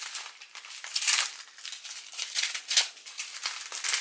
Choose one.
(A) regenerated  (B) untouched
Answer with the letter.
B